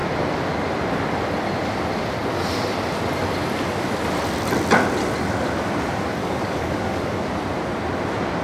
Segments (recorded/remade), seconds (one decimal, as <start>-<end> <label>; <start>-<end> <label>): 0.0-6.2 recorded; 6.2-7.3 remade; 7.3-8.4 recorded